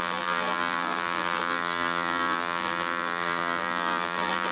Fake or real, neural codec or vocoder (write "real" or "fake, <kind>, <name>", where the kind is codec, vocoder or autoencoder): fake, vocoder, BigVGAN v2